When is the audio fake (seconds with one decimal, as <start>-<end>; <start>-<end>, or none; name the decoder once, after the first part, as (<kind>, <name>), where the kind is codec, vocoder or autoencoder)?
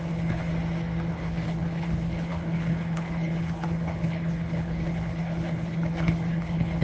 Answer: 0.0-0.5 (codec, HILCodec); 1.1-6.8